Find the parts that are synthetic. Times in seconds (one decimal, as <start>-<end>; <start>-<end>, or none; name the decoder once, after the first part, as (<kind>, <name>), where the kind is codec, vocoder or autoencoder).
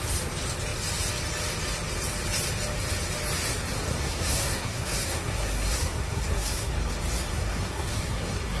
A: 3.9-6.7 (codec, SNAC); 7.3-8.6